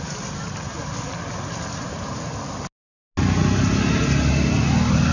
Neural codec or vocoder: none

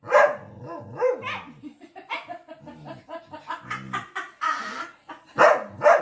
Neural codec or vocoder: none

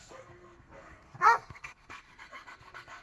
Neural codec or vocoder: codec, SNAC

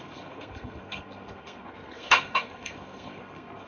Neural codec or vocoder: codec, SNAC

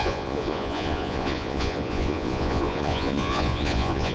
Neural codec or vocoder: vocoder, Vocos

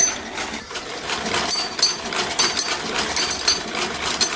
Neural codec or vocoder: none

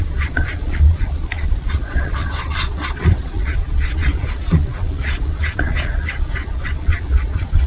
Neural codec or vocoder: vocoder, Vocos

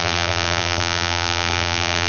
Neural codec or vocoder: vocoder, BigVGAN v2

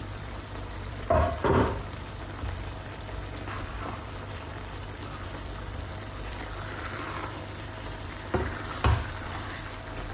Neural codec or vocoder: vocoder, BigVGAN v2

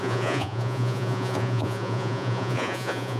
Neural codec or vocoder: vocoder, Vocos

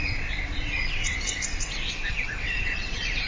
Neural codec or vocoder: vocoder, WaveNeXt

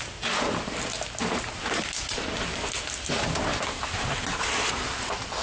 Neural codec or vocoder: none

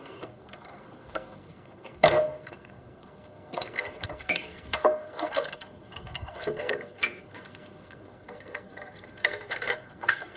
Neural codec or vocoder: codec, SNAC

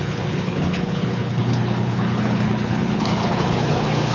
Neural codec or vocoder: codec, HILCodec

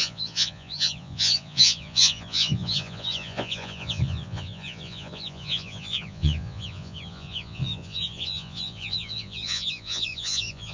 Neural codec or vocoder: vocoder, Vocos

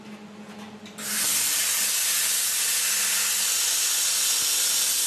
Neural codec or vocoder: none